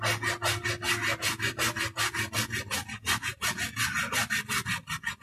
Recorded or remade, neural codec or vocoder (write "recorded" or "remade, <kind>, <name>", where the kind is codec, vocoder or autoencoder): recorded